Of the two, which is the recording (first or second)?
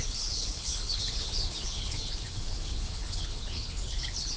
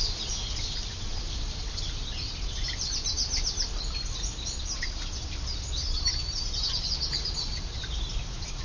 second